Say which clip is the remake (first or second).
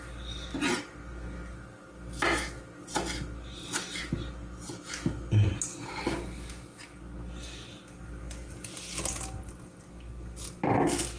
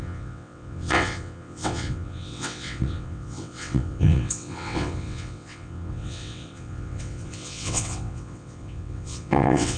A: second